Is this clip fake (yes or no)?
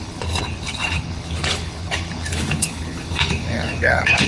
yes